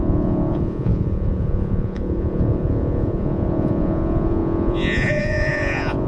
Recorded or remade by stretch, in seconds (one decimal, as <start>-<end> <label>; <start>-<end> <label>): 0.0-6.1 remade